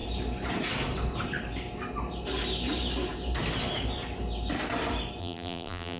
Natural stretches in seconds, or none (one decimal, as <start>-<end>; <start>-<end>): 0.0-5.2